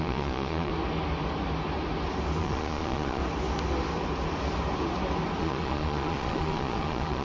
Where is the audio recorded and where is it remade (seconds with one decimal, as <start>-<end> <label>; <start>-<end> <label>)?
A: 0.0-0.7 remade; 0.7-2.4 recorded; 2.4-3.2 remade; 3.2-5.4 recorded; 5.4-7.2 remade